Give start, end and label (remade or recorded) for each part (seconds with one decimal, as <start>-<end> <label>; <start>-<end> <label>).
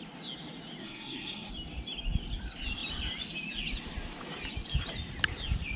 0.0-0.8 recorded; 0.8-1.5 remade; 1.5-5.8 recorded